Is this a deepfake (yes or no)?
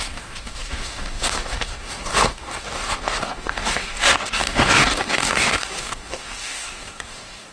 yes